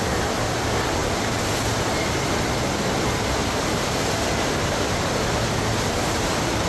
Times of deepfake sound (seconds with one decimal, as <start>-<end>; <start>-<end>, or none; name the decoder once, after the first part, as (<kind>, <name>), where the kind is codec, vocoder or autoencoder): none